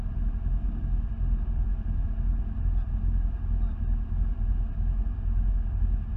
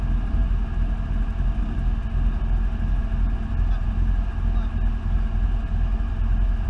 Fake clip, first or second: first